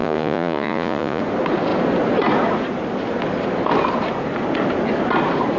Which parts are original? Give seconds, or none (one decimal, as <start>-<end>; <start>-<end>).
1.2-5.6